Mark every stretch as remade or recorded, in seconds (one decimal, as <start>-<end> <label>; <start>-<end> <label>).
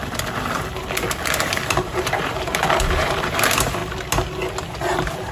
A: 0.0-1.7 recorded; 1.7-3.8 remade; 3.8-4.8 recorded; 4.8-5.3 remade